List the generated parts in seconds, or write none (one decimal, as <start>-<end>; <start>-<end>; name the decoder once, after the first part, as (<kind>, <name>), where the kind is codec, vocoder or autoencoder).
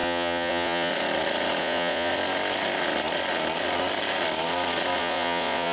0.0-0.9 (vocoder, Vocos); 1.6-2.1; 5.0-5.7